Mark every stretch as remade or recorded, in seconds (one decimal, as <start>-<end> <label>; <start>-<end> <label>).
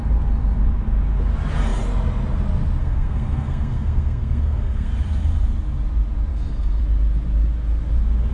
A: 0.0-2.8 recorded; 2.8-4.9 remade; 4.9-6.3 recorded; 6.3-6.8 remade; 6.8-8.3 recorded